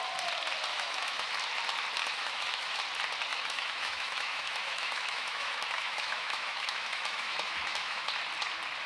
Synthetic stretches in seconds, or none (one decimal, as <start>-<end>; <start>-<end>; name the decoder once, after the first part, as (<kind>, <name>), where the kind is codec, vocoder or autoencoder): 0.7-1.3 (autoencoder, DAC-VAE); 2.0-2.8; 3.3-8.1